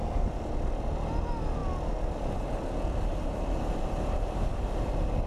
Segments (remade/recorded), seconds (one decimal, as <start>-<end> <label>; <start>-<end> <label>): 0.0-5.3 recorded